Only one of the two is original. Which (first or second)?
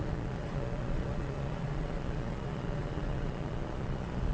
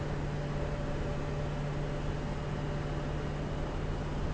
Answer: second